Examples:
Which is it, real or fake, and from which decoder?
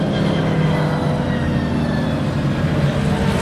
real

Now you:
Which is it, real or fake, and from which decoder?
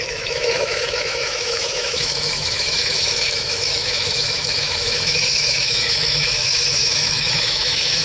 fake, autoencoder, DAC-VAE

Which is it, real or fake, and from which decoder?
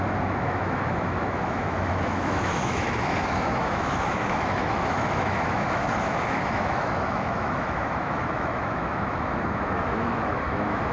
fake, autoencoder, DAC-VAE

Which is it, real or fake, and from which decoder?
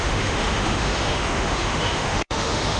fake, autoencoder, DAC-VAE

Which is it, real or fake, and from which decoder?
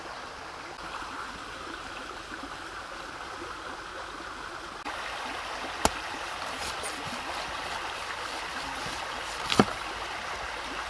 real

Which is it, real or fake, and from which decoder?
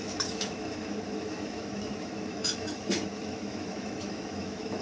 fake, autoencoder, DAC-VAE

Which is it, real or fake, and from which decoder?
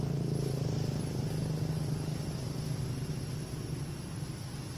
real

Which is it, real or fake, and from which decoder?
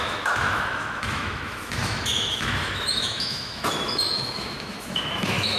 fake, autoencoder, DAC-VAE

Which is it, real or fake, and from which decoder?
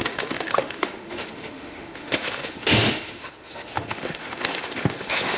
fake, autoencoder, DAC-VAE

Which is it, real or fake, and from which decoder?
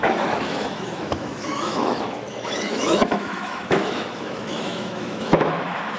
fake, autoencoder, DAC-VAE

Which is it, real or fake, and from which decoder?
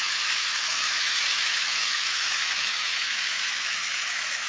fake, autoencoder, DAC-VAE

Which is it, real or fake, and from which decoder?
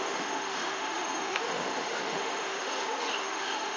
fake, autoencoder, DAC-VAE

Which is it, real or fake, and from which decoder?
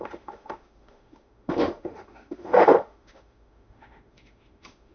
fake, autoencoder, DAC-VAE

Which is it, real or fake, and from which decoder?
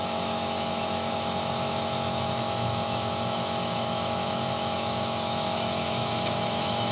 fake, autoencoder, DAC-VAE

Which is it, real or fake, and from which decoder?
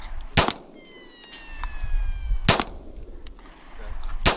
real